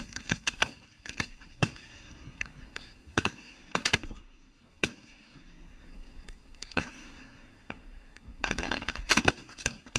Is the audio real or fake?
fake